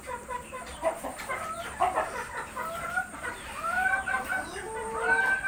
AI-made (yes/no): yes